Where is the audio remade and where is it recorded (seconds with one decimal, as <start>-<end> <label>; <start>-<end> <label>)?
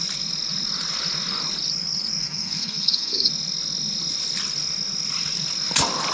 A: 0.0-2.2 recorded; 2.2-3.3 remade; 3.3-6.1 recorded